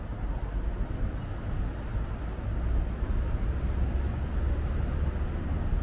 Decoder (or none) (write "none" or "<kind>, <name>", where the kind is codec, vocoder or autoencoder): none